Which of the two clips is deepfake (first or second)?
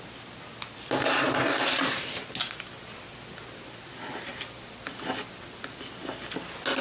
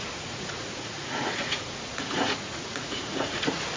second